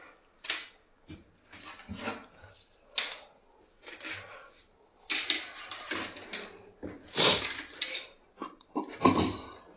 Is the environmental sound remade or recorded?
recorded